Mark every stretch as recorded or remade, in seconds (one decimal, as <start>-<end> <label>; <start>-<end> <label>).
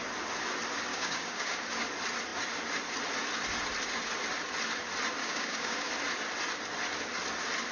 0.0-0.9 recorded; 0.9-1.7 remade; 1.7-5.2 recorded; 5.2-5.9 remade; 5.9-7.7 recorded